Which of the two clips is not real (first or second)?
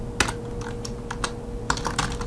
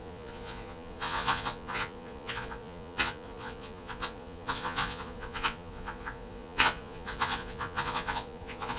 second